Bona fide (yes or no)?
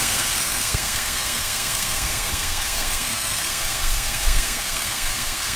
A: no